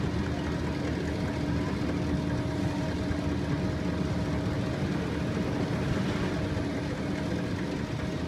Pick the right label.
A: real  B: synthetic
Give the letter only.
A